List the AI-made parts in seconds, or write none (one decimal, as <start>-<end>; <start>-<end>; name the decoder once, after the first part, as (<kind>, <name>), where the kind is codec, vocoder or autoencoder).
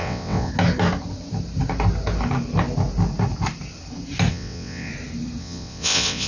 0.0-0.5 (vocoder, WaveNeXt); 4.3-4.9; 5.4-6.3